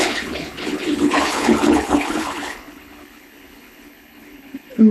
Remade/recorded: remade